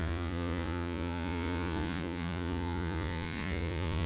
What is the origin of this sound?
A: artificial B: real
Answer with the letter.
A